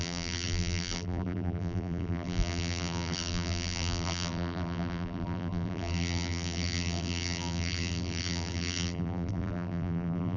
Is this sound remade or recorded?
remade